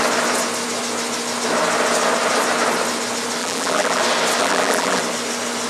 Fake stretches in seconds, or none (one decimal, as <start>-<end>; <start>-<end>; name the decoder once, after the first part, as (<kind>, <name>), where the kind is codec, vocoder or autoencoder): 3.4-4.0 (vocoder, BigVGAN v2); 4.4-5.0